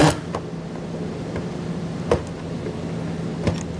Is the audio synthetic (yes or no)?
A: no